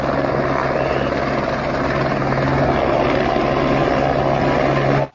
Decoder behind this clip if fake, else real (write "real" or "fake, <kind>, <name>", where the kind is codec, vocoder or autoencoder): real